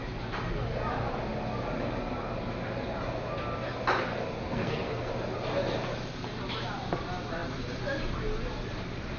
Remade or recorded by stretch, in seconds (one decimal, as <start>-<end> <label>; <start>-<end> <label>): 0.0-4.4 recorded; 4.4-5.1 remade; 5.1-9.2 recorded